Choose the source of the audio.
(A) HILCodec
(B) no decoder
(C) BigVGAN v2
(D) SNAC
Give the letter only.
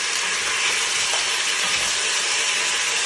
B